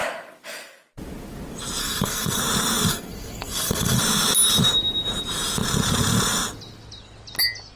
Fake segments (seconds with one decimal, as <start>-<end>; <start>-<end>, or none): 1.8-2.4; 2.9-4.0